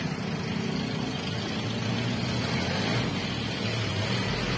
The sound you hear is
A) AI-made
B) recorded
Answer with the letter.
B